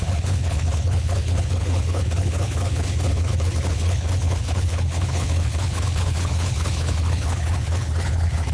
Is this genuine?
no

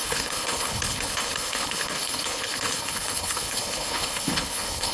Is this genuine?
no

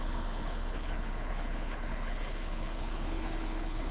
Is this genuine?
no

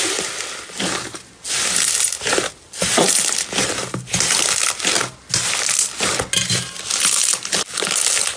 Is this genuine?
yes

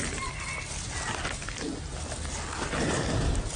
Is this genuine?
yes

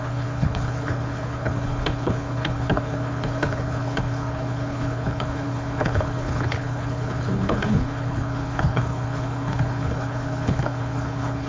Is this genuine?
no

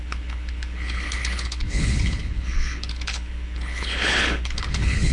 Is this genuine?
no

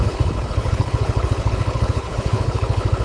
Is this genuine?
no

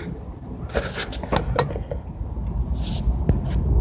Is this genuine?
yes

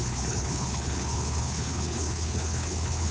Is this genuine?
no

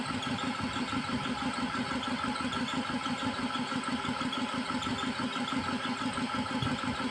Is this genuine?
yes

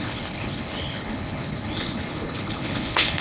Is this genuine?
no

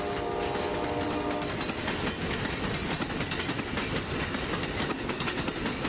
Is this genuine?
yes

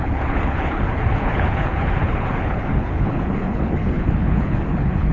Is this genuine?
no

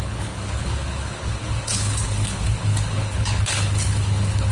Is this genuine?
no